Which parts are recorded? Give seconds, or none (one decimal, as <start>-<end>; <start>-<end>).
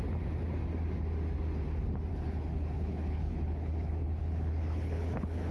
0.0-2.1